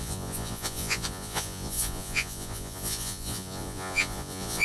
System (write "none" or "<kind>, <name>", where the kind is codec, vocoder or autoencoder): vocoder, Vocos